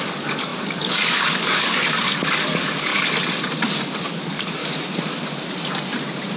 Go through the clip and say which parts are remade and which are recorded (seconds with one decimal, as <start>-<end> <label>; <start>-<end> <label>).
0.0-2.9 remade; 2.9-4.0 recorded; 4.0-4.6 remade; 4.6-6.4 recorded